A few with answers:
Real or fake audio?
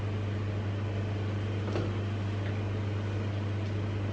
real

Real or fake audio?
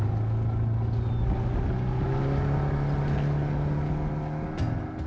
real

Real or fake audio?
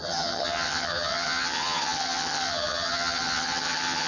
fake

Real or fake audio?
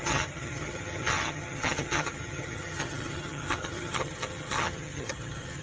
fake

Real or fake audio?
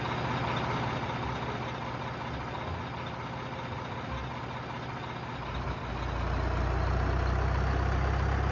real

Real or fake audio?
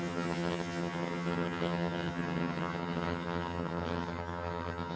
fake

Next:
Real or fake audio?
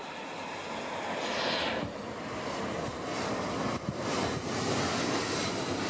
real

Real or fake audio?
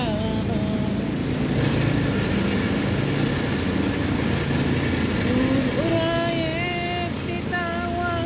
real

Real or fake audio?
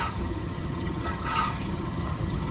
fake